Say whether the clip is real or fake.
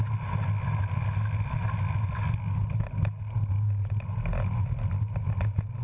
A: real